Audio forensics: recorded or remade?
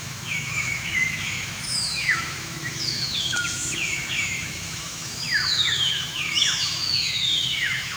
remade